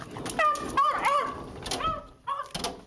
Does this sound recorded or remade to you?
recorded